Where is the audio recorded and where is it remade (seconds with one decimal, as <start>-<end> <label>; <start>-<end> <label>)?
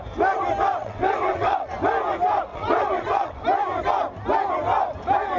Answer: 0.0-0.8 recorded; 0.8-1.7 remade; 1.7-2.5 recorded; 2.5-3.4 remade; 3.4-5.4 recorded